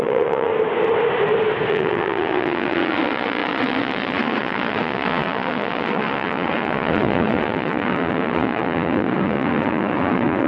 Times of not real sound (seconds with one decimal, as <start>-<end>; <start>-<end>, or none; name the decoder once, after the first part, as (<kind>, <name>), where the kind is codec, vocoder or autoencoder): 0.0-0.5 (vocoder, Vocos); 1.7-10.5